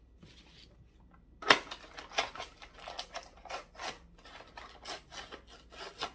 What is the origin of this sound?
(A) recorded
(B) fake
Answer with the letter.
A